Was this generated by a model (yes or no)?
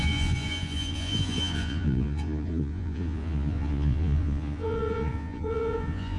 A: yes